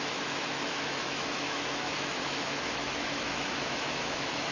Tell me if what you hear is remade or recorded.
remade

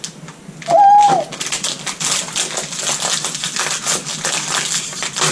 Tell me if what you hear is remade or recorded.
recorded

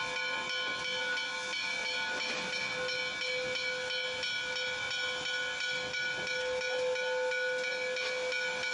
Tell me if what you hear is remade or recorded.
recorded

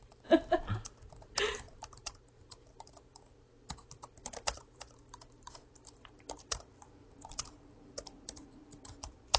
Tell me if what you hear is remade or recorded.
remade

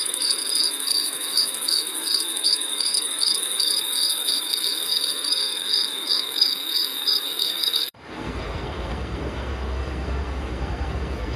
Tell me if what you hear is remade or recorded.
remade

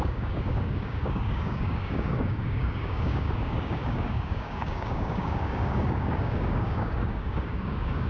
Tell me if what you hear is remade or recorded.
remade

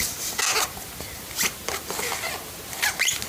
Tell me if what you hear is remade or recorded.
recorded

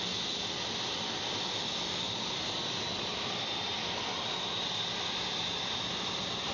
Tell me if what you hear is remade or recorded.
recorded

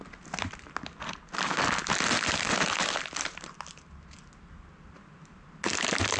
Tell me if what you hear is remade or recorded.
recorded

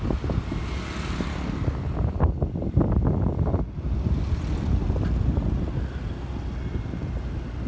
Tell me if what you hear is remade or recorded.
recorded